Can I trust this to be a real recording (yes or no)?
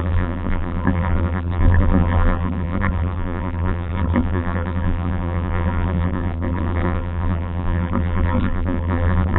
no